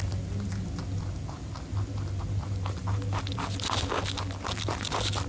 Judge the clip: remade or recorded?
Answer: recorded